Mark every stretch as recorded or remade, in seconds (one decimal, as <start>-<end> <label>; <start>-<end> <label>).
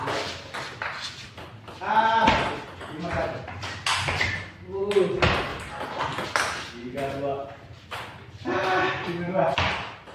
0.0-5.5 recorded; 5.5-6.0 remade; 6.0-10.1 recorded